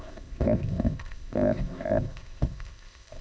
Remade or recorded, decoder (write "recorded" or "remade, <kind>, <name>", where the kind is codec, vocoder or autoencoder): remade, codec, ZipCodec